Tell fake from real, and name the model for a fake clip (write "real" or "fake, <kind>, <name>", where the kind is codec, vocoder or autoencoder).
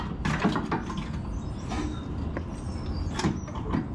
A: real